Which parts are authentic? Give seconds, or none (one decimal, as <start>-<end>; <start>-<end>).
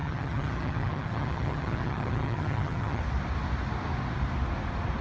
3.0-5.0